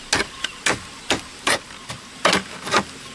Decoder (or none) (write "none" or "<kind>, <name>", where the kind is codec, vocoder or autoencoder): none